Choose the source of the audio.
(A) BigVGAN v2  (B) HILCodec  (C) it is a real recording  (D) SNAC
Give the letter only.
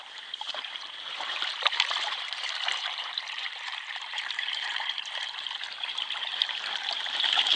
A